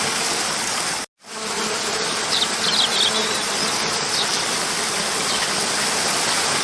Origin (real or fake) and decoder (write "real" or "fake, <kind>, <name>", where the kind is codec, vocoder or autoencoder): real